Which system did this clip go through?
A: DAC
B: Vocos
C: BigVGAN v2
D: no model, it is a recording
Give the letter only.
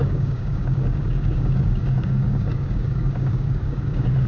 A